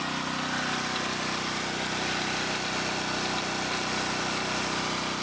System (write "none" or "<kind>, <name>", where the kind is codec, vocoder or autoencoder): none